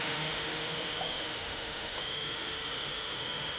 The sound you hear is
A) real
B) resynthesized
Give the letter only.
B